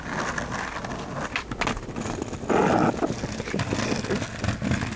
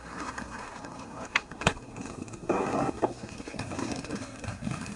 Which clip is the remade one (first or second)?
second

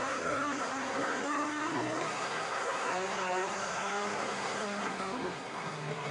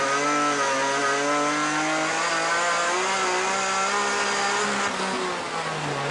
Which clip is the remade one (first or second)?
first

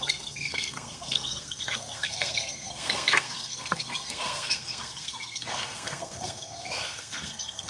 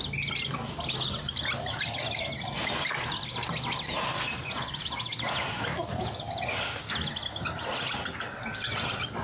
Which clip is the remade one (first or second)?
first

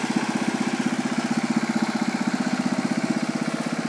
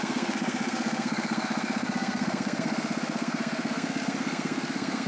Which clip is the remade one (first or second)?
second